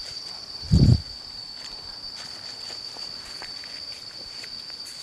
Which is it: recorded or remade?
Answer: remade